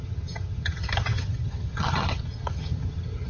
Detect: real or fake fake